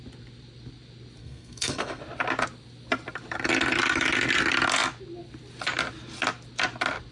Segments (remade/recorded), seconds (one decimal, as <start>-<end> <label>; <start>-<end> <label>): 0.0-1.2 recorded; 1.2-2.0 remade; 2.0-7.1 recorded

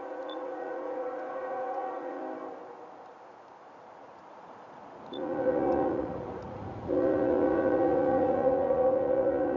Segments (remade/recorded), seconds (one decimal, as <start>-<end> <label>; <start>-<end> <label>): 0.0-2.2 remade; 2.2-3.6 recorded; 3.6-9.6 remade

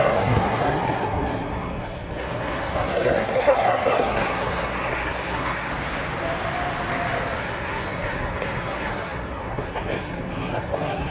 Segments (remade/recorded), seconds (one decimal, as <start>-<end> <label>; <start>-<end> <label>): 0.0-5.7 remade; 5.7-7.4 recorded; 7.4-11.1 remade

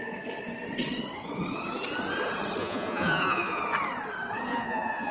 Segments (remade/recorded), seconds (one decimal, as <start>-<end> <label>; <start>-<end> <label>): 0.0-2.6 recorded; 2.6-3.6 remade; 3.6-4.5 recorded; 4.5-5.1 remade

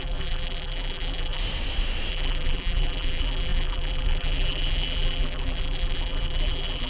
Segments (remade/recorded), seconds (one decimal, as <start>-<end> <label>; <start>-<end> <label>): 0.0-1.4 remade; 1.4-2.1 recorded; 2.1-6.9 remade

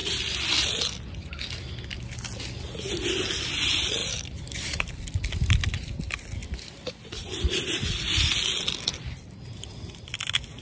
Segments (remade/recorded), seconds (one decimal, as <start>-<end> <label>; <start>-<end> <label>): 0.0-0.9 remade; 0.9-4.0 recorded; 4.0-6.0 remade; 6.0-6.4 recorded; 6.4-7.1 remade; 7.1-10.6 recorded

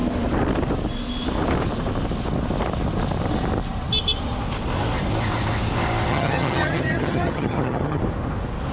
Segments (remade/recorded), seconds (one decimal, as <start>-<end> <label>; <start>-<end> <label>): 0.0-6.1 recorded; 6.1-8.0 remade; 8.0-8.7 recorded

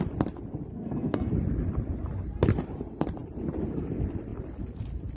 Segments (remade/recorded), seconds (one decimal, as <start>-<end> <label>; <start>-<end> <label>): 0.0-0.7 recorded; 0.7-1.3 remade; 1.3-5.2 recorded